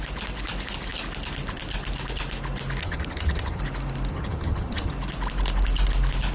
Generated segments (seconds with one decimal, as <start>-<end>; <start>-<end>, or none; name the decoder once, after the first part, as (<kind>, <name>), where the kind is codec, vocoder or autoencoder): 2.8-3.6 (vocoder, HiFi-GAN); 4.1-4.9